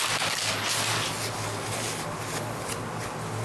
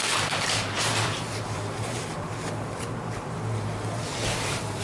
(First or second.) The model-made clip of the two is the second